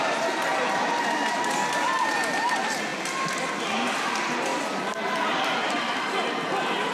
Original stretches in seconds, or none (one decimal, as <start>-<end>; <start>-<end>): 0.0-4.5; 6.0-6.9